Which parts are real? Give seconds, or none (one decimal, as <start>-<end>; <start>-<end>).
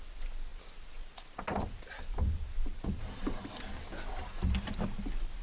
0.0-5.4